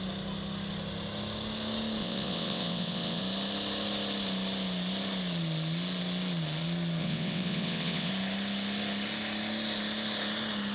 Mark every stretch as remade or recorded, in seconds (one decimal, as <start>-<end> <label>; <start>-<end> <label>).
0.0-2.0 recorded; 2.0-3.2 remade; 3.2-7.0 recorded; 7.0-8.1 remade; 8.1-10.7 recorded